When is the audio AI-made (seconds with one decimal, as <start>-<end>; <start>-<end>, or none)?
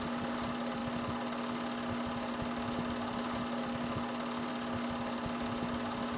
none